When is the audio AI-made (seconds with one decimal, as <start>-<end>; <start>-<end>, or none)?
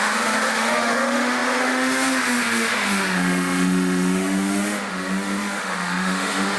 0.0-6.6